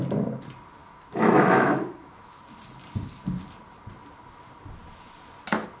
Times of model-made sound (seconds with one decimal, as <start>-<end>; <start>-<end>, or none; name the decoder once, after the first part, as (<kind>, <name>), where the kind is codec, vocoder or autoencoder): 0.8-2.4 (autoencoder, DAC-VAE)